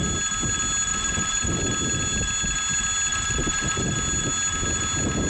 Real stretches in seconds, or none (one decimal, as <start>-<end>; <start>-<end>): 0.0-0.9; 1.6-3.1; 3.9-5.3